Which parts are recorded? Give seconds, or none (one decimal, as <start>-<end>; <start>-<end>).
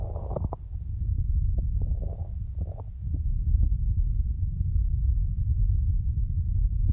0.0-6.9